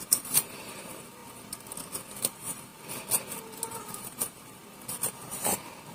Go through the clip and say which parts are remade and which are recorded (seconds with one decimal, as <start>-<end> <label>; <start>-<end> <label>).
0.0-1.2 remade; 1.2-2.2 recorded; 2.2-2.7 remade; 2.7-3.7 recorded; 3.7-4.6 remade; 4.6-5.9 recorded